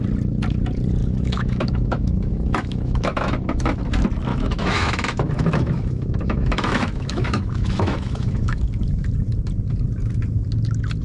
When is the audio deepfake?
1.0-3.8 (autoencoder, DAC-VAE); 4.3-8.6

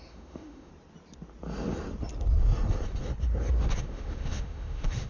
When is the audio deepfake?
0.0-0.7 (autoencoder, DAC-VAE); 3.8-5.1

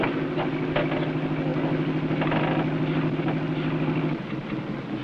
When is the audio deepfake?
none